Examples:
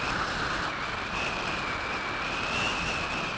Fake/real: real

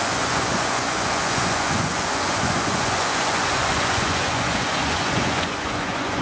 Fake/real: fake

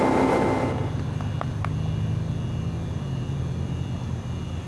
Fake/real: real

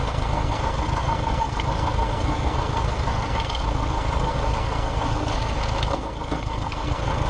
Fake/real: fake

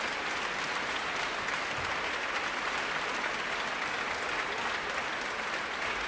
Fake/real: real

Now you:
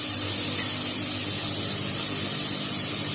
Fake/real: real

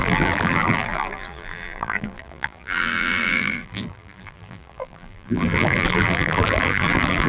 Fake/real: fake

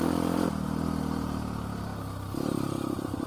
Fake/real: real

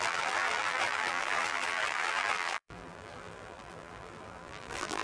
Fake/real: fake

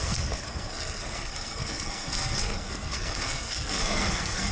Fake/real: fake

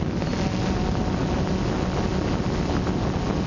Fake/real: real